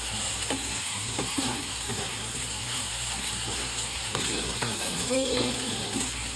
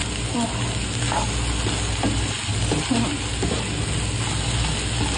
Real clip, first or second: second